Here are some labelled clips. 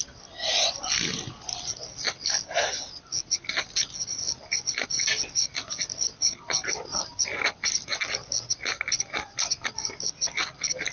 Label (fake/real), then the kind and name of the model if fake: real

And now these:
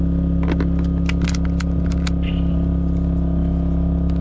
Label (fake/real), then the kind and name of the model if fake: real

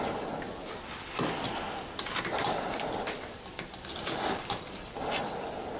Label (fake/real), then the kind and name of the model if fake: real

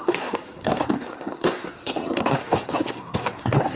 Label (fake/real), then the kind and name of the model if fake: fake, codec, SNAC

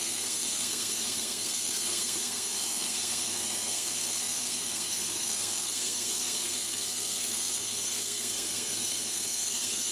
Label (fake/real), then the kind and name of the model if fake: fake, codec, SNAC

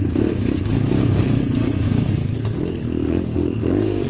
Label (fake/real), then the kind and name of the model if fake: fake, codec, SNAC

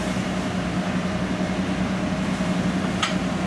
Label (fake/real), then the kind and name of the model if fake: real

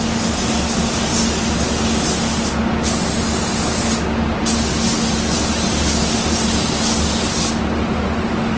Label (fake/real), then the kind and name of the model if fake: real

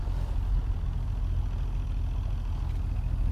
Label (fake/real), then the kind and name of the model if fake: real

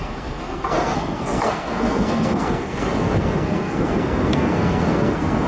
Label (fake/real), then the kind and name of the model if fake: fake, codec, SNAC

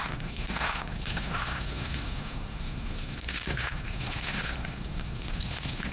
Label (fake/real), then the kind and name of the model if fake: fake, codec, SNAC